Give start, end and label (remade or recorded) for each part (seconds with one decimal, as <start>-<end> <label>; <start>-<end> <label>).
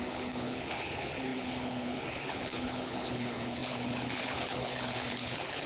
0.0-5.7 remade